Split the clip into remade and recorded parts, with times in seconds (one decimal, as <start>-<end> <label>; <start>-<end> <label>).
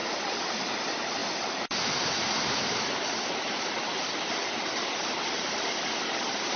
0.0-0.5 recorded; 0.5-1.2 remade; 1.2-5.2 recorded; 5.2-6.6 remade